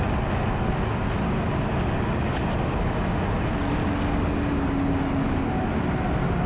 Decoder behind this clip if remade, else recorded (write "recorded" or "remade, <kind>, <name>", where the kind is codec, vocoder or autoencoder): recorded